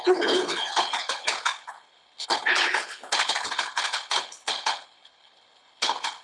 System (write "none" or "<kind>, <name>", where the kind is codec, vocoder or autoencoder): codec, HILCodec